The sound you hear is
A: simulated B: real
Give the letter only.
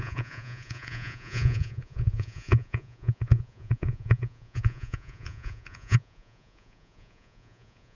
A